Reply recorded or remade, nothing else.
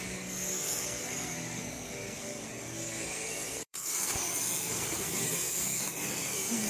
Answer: remade